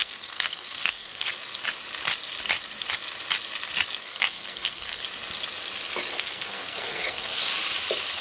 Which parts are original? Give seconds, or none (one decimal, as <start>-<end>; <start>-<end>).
1.3-4.0; 5.0-6.1; 7.5-8.2